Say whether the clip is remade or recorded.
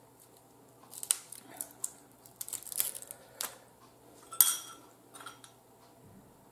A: recorded